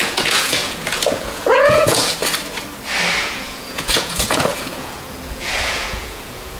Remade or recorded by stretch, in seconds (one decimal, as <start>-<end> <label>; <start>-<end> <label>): 0.0-2.2 remade; 2.2-3.2 recorded; 3.2-6.6 remade